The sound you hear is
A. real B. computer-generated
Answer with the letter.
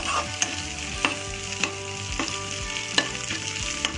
A